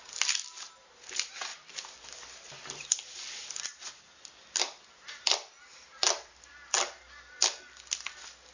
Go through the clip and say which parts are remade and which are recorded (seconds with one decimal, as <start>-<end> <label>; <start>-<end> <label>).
0.0-1.5 recorded; 1.5-6.5 remade; 6.5-8.5 recorded